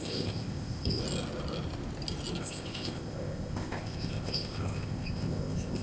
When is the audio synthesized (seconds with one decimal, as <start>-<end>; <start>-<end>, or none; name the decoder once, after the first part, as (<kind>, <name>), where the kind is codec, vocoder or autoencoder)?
0.0-1.0 (codec, ZipCodec); 2.4-5.8